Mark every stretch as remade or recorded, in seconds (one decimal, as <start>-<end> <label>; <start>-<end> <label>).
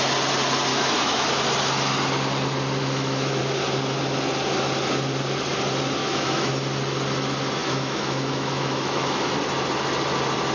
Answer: 0.0-0.7 recorded; 0.7-1.3 remade; 1.3-2.8 recorded; 2.8-3.4 remade; 3.4-6.0 recorded; 6.0-6.5 remade; 6.5-7.6 recorded; 7.6-9.4 remade; 9.4-10.5 recorded